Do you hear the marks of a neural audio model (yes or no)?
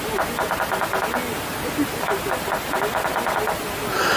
no